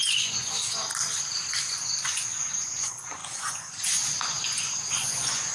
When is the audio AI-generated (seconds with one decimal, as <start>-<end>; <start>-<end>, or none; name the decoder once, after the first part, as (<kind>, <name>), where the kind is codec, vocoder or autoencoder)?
0.0-0.9 (vocoder, Vocos); 1.7-5.5

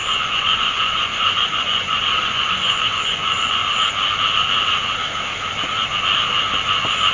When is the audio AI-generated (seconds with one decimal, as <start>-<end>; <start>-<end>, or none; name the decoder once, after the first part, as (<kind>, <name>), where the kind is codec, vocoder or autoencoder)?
0.0-3.6 (vocoder, Vocos)

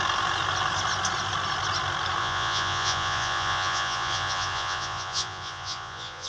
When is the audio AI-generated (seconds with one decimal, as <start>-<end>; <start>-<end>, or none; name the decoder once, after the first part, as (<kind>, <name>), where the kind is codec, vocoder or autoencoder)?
2.2-6.3 (vocoder, Vocos)